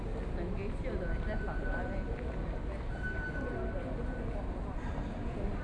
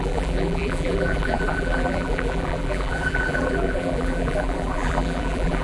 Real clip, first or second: first